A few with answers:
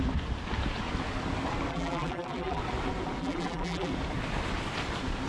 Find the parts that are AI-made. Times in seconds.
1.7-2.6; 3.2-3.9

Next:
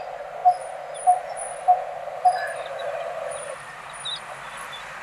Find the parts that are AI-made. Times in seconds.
2.8-3.7

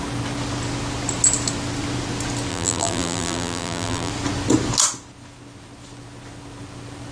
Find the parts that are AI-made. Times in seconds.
2.5-4.1

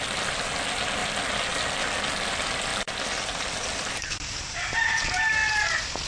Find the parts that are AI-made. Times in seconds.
2.7-4.6

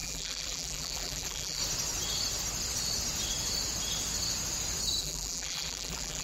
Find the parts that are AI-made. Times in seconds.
0.0-1.6; 5.0-6.2

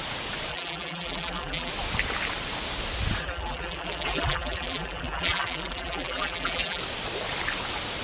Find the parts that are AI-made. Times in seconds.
0.5-1.7; 3.2-6.8

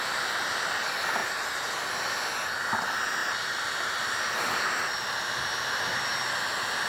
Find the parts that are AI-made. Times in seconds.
3.2-4.8